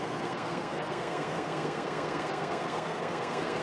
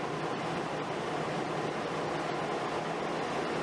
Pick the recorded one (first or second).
second